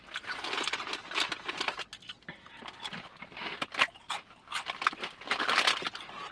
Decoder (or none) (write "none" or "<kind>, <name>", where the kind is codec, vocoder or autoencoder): none